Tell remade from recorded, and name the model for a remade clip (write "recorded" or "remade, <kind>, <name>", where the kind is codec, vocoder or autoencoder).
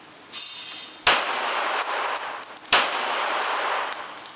recorded